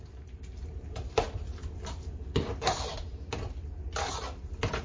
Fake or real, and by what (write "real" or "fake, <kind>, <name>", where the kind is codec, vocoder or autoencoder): real